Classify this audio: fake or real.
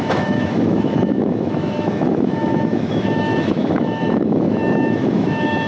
fake